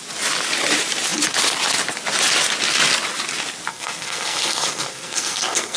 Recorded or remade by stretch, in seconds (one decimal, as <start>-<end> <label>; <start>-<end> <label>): 0.0-3.7 recorded; 3.7-5.8 remade